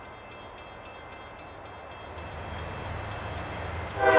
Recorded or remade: recorded